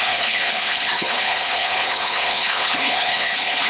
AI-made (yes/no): yes